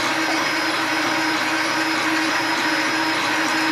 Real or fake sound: real